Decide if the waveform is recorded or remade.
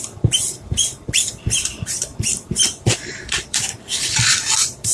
remade